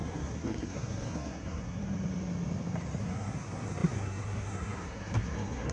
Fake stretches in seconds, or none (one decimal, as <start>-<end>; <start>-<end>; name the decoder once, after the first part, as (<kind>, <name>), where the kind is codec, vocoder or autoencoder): 0.0-1.8 (codec, SNAC); 3.0-5.7